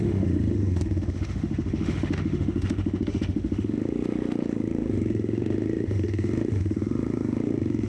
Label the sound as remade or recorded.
remade